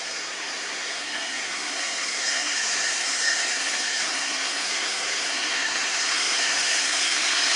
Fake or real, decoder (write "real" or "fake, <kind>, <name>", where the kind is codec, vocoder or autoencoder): fake, codec, SNAC